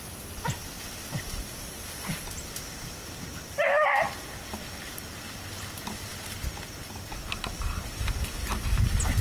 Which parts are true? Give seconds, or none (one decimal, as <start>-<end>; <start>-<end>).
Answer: 0.0-9.2